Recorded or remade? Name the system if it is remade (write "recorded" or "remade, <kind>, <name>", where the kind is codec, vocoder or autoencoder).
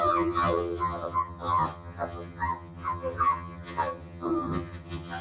remade, vocoder, HiFi-GAN